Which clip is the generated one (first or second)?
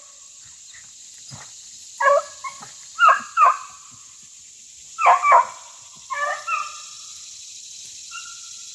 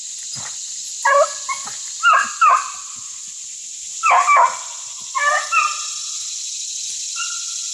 first